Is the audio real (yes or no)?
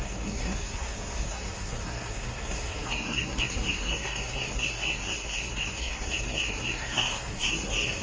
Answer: no